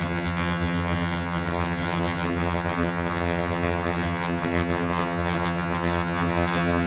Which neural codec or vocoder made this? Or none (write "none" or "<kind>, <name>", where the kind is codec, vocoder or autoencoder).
vocoder, HiFi-GAN